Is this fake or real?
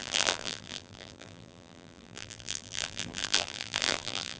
fake